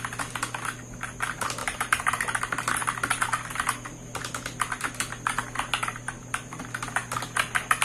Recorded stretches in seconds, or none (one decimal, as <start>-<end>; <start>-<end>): 0.0-1.6; 2.4-5.9; 6.6-7.8